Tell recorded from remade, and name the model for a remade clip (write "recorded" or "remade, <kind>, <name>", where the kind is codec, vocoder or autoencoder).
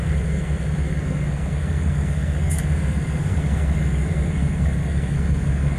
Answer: remade, codec, SNAC